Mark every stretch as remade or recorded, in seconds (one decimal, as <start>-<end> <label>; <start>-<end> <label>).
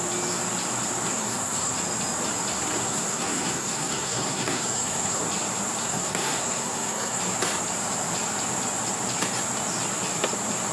0.0-1.1 recorded; 1.1-1.7 remade; 1.7-2.8 recorded; 2.8-5.2 remade; 5.2-5.8 recorded; 5.8-7.2 remade; 7.2-10.7 recorded